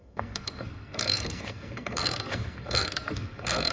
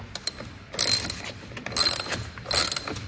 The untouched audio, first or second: second